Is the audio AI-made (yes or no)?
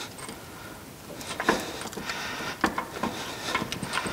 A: no